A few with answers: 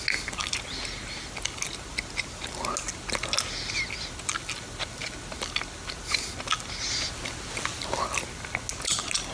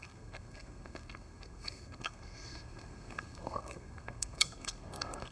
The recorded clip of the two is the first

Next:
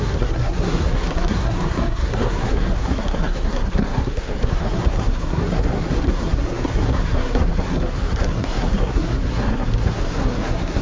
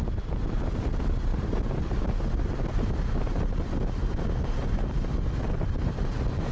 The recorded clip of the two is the second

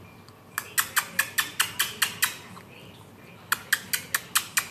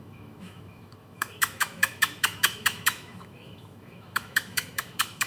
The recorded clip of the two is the first